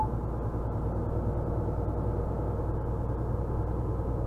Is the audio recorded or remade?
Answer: recorded